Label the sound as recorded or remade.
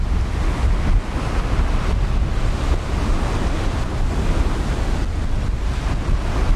recorded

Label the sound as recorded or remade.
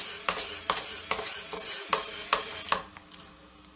recorded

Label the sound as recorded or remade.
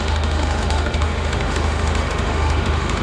remade